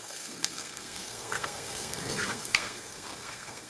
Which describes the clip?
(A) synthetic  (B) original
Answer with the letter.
A